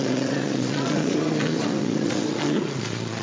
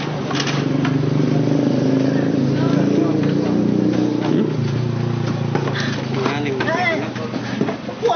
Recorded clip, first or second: second